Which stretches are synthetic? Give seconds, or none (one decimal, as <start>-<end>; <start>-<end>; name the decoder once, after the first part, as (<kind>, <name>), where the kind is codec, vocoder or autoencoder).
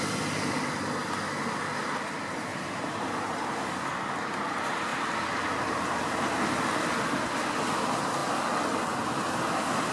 2.5-3.5 (vocoder, BigVGAN v2); 4.9-6.3